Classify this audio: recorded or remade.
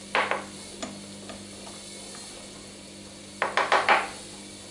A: recorded